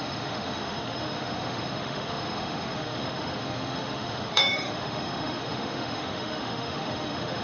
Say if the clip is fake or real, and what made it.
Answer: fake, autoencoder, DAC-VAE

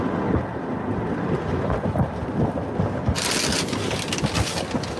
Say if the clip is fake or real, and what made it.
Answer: real